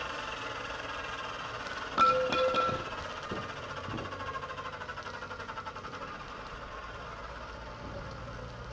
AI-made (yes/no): no